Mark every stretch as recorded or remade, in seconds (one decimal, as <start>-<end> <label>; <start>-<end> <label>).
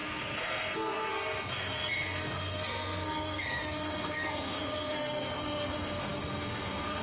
0.0-7.0 remade